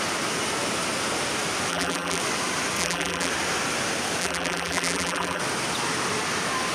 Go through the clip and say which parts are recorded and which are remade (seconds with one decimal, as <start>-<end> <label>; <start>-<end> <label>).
0.0-1.7 recorded; 1.7-2.2 remade; 2.2-2.8 recorded; 2.8-3.3 remade; 3.3-4.2 recorded; 4.2-5.4 remade; 5.4-6.7 recorded